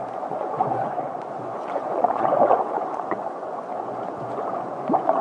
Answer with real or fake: fake